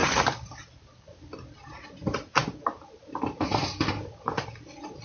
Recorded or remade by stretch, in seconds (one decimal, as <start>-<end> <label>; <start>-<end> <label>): 0.0-0.9 remade; 0.9-5.0 recorded

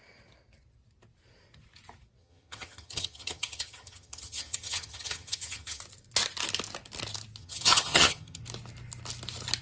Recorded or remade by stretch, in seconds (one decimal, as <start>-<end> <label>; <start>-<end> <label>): 0.0-2.2 recorded; 2.2-5.8 remade; 5.8-7.4 recorded; 7.4-8.4 remade; 8.4-9.6 recorded

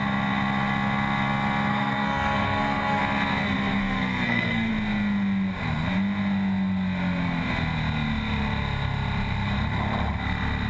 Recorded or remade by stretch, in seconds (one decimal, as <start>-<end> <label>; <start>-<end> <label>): 0.0-1.7 recorded; 1.7-3.0 remade; 3.0-3.8 recorded; 3.8-4.7 remade; 4.7-10.7 recorded

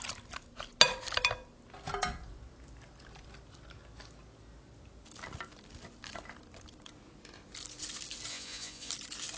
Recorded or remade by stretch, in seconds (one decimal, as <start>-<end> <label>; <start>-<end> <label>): 0.0-8.3 recorded; 8.3-8.9 remade; 8.9-9.4 recorded

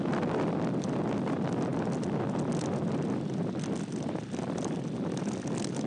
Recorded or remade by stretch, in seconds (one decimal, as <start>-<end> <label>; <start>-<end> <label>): 0.0-5.9 recorded